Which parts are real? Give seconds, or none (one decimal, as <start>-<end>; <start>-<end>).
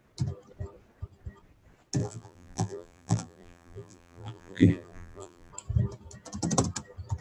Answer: 0.0-2.0; 5.5-7.2